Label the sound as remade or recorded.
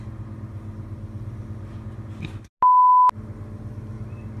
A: recorded